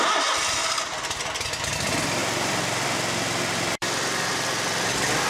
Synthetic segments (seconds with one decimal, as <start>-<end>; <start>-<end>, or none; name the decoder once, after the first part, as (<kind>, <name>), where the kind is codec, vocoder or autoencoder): 2.2-4.3 (vocoder, BigVGAN v2)